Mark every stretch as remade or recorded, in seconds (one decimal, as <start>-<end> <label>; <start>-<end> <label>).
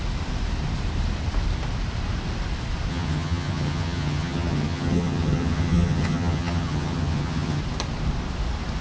0.0-2.9 recorded; 2.9-7.6 remade; 7.6-8.8 recorded